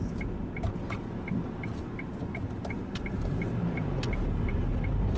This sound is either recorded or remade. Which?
recorded